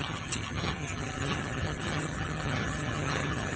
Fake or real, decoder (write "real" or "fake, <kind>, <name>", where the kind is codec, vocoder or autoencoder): fake, vocoder, HiFi-GAN